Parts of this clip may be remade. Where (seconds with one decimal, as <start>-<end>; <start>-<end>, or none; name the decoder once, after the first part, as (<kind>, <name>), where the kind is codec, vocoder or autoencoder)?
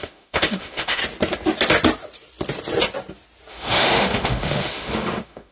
0.0-1.0 (autoencoder, DAC-VAE); 3.5-5.5